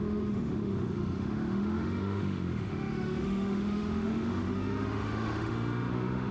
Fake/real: fake